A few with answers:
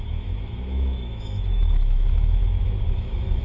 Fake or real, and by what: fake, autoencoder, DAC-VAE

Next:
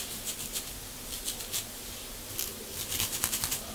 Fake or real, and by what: real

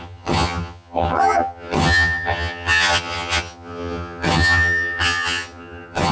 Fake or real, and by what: fake, vocoder, HiFi-GAN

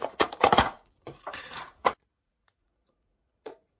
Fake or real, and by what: fake, vocoder, Vocos